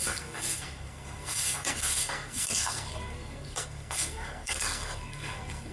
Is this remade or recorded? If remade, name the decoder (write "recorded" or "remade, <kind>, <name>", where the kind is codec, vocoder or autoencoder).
remade, codec, SNAC